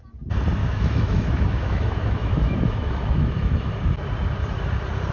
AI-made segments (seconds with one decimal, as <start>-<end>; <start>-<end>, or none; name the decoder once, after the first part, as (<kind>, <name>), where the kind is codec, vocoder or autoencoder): 0.6-3.7 (autoencoder, DAC-VAE)